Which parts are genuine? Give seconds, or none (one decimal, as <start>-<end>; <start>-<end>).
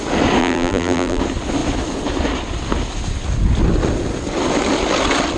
0.0-0.4; 1.2-5.4